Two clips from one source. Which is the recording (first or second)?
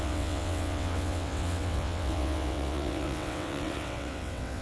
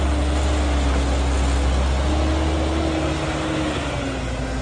second